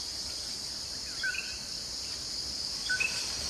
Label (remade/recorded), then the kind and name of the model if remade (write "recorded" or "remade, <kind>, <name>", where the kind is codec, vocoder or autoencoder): recorded